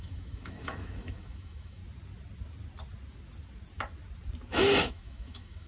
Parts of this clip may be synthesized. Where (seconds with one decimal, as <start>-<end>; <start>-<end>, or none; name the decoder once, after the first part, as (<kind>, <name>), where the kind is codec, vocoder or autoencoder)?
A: 0.0-1.8 (autoencoder, DAC-VAE); 4.5-5.7